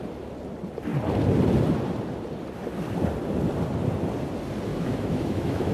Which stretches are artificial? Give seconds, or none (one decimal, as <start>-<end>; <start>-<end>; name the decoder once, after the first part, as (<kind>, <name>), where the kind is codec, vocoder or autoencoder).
4.7-5.7 (autoencoder, DAC-VAE)